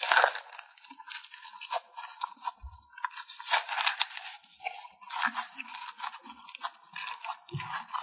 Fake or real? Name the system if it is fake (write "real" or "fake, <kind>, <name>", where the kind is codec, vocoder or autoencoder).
real